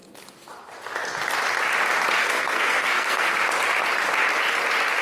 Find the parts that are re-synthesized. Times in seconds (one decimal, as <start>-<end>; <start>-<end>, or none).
2.2-3.4